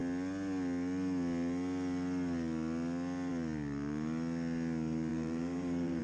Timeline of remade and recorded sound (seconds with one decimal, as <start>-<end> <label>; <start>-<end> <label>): 0.0-5.1 recorded; 5.1-6.0 remade